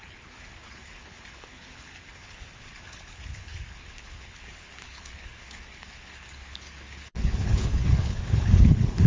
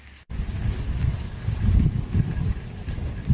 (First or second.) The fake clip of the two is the first